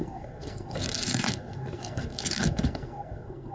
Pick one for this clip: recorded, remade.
remade